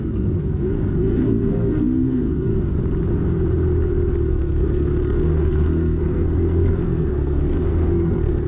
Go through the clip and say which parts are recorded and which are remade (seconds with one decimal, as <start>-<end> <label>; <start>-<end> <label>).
0.0-2.5 remade; 2.5-4.3 recorded; 4.3-8.5 remade